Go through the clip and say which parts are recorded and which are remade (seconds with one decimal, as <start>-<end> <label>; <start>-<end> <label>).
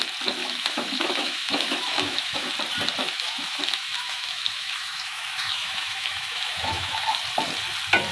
0.0-0.4 recorded; 0.4-2.5 remade; 2.5-3.0 recorded; 3.0-7.0 remade; 7.0-8.1 recorded